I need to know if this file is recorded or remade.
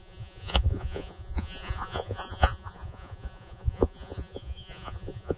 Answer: remade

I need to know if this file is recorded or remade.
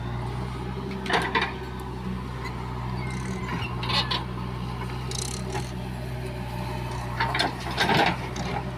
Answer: recorded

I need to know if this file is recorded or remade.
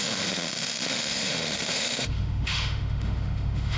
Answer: remade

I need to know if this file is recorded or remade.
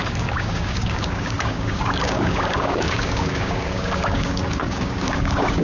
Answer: remade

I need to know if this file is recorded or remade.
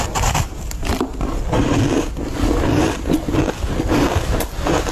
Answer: recorded